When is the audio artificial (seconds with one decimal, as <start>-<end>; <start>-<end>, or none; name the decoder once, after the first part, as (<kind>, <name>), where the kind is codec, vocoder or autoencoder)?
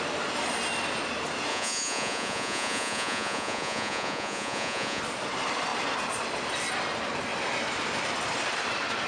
1.5-5.0 (vocoder, Vocos)